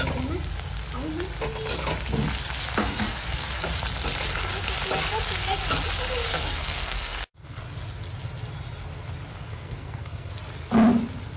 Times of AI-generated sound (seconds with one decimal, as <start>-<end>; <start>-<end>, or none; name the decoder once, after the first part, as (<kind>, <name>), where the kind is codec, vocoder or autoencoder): 2.8-3.6 (codec, SNAC); 6.3-7.6; 9.3-10.3